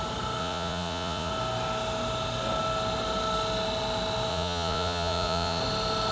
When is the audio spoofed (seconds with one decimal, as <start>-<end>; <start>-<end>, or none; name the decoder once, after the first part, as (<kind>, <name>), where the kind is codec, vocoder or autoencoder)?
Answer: 0.4-1.3 (vocoder, Vocos); 4.3-5.6